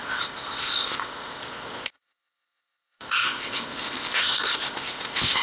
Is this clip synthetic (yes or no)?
yes